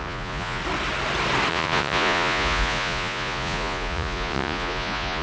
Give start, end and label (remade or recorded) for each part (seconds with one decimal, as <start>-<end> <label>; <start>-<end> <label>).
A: 0.0-0.6 remade; 0.6-1.5 recorded; 1.5-5.2 remade